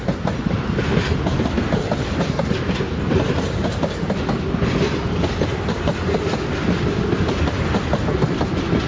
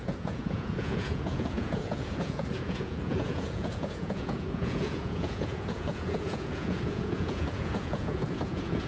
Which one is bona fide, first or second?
first